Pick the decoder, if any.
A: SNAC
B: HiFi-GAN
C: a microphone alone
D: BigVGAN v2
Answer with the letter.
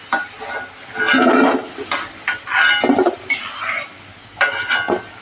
C